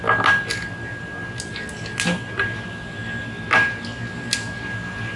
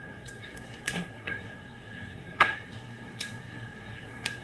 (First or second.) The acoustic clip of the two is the first